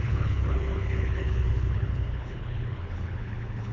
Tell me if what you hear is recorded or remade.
remade